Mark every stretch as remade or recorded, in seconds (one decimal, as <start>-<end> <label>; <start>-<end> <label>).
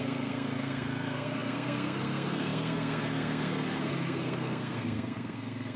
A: 0.0-5.8 remade